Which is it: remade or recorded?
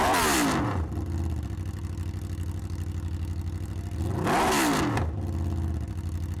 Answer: recorded